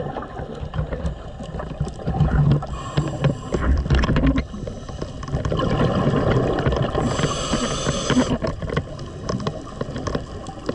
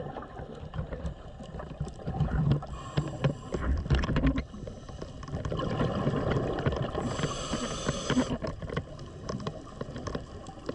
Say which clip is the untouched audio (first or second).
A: first